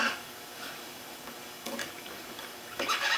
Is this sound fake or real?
fake